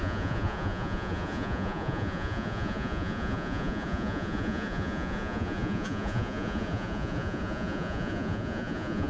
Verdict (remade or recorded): remade